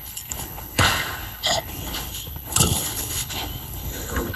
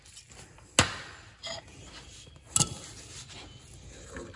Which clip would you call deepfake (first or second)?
first